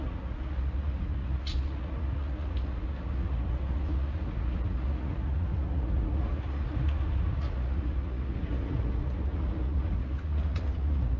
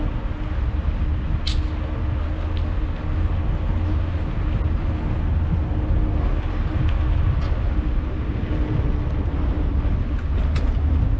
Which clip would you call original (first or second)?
second